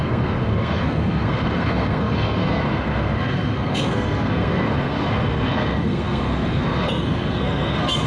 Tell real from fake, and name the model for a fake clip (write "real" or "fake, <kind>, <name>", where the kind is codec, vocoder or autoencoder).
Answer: fake, codec, SNAC